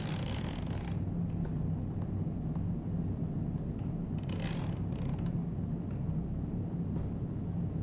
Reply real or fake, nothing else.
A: real